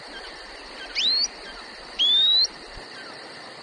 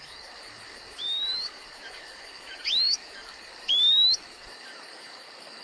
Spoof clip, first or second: second